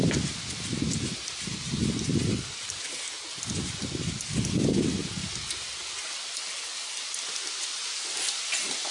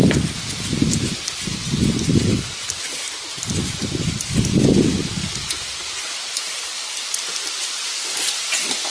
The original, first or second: first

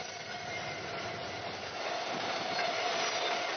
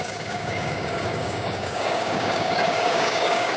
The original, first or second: first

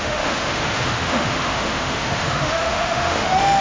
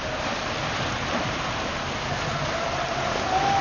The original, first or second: second